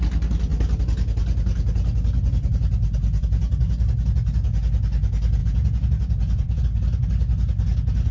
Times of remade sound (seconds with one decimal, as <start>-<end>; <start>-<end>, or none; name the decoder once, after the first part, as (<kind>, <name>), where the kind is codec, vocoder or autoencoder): 5.4-6.6 (vocoder, Vocos)